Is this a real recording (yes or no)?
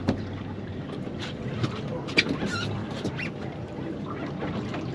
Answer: no